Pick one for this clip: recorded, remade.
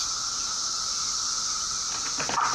recorded